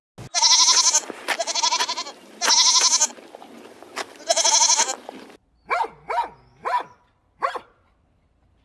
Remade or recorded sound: recorded